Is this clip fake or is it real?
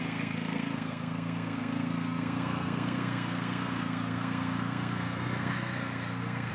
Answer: fake